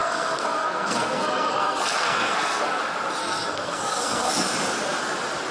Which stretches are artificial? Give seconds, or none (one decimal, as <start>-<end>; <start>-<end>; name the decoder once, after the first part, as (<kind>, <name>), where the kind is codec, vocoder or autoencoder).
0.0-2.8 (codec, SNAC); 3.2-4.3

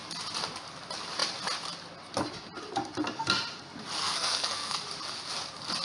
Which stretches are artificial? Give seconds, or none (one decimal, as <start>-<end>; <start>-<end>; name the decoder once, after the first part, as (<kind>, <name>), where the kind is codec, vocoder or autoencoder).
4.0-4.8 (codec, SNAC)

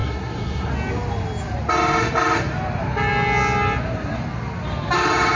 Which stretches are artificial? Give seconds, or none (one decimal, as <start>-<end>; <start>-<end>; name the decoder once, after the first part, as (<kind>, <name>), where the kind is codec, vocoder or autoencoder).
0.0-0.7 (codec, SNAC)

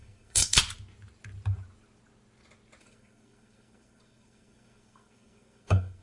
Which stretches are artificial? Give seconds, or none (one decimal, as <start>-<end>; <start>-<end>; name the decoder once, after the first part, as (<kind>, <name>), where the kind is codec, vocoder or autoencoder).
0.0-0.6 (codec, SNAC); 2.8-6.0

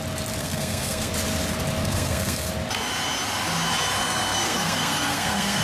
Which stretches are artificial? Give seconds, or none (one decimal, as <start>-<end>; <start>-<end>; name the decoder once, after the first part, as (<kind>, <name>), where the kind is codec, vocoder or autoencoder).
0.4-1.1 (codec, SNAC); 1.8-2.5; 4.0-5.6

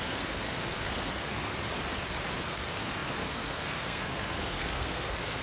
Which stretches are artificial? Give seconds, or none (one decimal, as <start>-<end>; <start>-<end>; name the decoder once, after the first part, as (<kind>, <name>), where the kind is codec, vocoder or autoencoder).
0.0-1.5 (codec, SNAC); 2.4-5.4

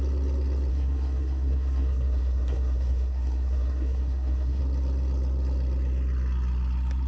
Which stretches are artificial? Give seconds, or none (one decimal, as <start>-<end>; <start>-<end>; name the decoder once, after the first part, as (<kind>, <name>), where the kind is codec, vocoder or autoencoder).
0.7-4.6 (codec, SNAC)

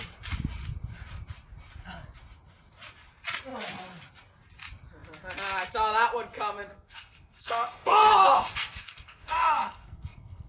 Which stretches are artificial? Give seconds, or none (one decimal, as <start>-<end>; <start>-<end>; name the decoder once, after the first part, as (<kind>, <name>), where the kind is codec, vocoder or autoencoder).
6.7-10.5 (codec, SNAC)